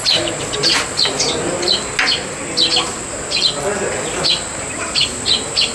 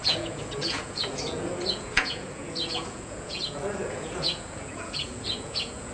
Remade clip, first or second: second